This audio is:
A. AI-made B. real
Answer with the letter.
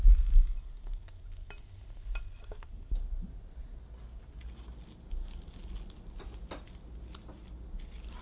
B